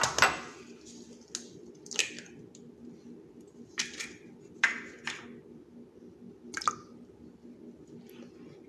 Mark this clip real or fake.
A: real